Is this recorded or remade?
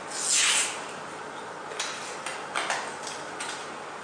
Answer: recorded